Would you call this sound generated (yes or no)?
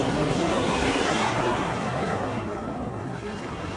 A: yes